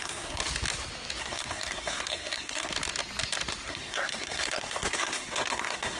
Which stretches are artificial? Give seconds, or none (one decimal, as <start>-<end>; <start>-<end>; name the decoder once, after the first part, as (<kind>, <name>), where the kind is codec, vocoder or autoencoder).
0.0-0.4 (codec, SNAC); 1.2-2.7; 3.7-6.0